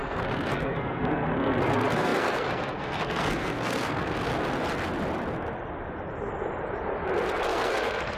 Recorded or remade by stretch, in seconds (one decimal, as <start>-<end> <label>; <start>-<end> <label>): 0.0-4.3 remade; 4.3-7.4 recorded; 7.4-8.2 remade